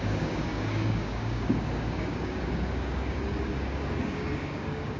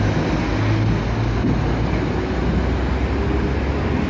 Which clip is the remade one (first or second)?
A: first